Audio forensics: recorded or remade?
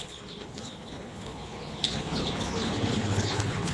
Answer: remade